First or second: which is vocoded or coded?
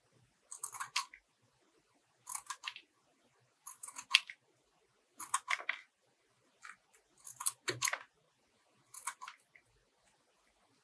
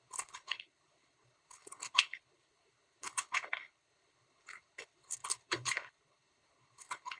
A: second